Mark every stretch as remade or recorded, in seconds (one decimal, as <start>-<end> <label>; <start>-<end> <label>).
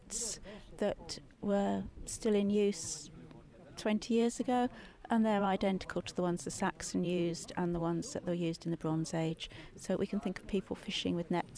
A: 0.0-4.4 remade; 4.4-5.4 recorded; 5.4-7.3 remade; 7.3-11.6 recorded